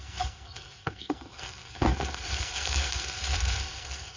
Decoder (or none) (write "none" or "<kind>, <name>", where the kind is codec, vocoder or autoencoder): codec, SNAC